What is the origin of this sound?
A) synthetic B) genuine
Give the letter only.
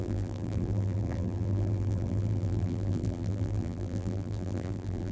A